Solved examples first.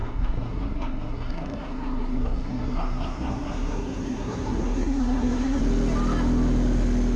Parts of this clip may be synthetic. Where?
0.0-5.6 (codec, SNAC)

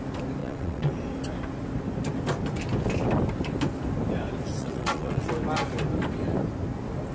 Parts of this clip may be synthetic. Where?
0.4-0.9 (vocoder, WaveNeXt); 4.6-5.3

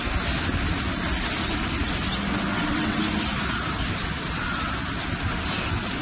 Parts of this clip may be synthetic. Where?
2.5-3.0 (vocoder, WaveNeXt)

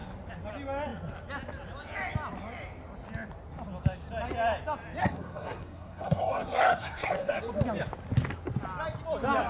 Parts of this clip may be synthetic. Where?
5.0-7.4 (codec, SNAC)

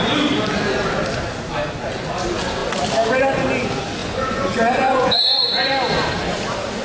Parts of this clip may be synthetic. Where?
4.0-5.5 (vocoder, Vocos)

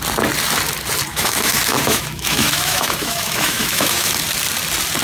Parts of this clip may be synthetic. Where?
1.1-4.1 (autoencoder, DAC-VAE)

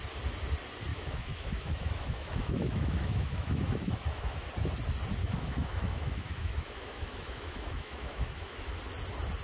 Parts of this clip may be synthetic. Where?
0.9-4.5 (autoencoder, DAC-VAE); 5.2-8.8